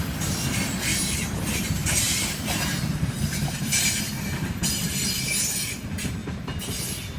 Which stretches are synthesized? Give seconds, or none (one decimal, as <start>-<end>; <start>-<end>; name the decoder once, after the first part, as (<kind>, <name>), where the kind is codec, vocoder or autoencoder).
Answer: 0.9-1.4 (vocoder, BigVGAN v2); 1.8-4.6; 6.2-6.8